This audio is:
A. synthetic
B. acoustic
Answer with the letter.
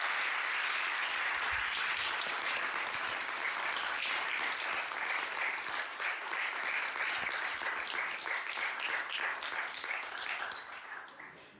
B